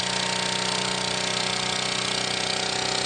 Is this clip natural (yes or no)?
yes